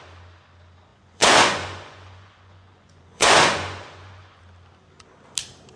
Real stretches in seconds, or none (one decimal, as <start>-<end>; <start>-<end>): 0.0-0.9; 4.4-5.8